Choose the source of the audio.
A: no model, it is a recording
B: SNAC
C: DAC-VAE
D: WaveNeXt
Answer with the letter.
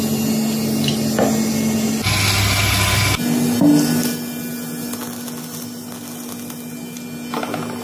A